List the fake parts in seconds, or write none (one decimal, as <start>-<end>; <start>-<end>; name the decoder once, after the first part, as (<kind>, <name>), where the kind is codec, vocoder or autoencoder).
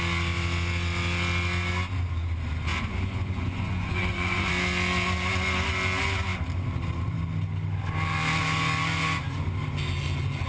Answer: 2.7-4.5 (vocoder, Vocos)